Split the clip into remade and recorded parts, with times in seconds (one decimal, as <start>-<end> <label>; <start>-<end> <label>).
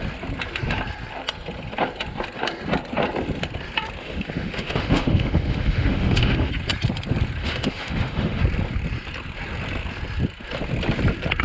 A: 0.0-4.0 recorded; 4.0-6.5 remade; 6.5-7.4 recorded; 7.4-8.4 remade; 8.4-11.4 recorded